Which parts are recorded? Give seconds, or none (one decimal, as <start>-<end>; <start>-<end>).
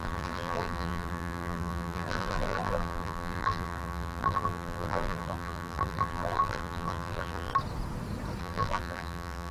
7.5-8.4